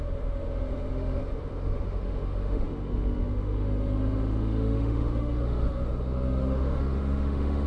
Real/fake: fake